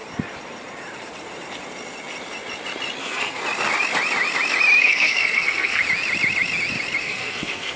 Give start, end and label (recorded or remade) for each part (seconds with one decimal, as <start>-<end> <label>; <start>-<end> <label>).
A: 0.0-3.0 recorded; 3.0-3.4 remade; 3.4-4.8 recorded; 4.8-5.8 remade; 5.8-7.0 recorded; 7.0-7.8 remade